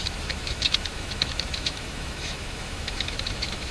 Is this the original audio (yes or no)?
no